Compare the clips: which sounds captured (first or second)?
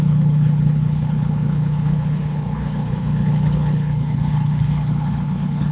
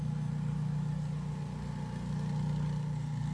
second